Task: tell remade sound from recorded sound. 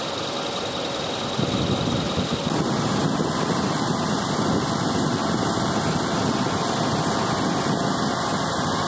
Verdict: recorded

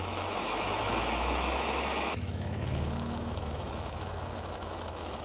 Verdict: remade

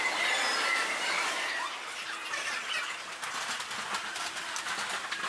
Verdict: recorded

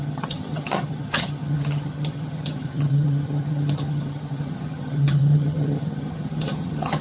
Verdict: remade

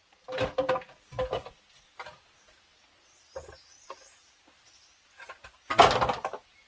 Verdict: recorded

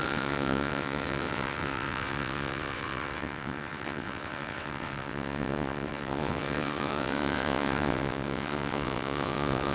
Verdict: remade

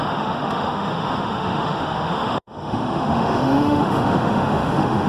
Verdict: remade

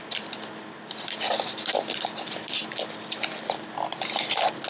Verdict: recorded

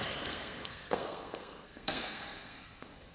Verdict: remade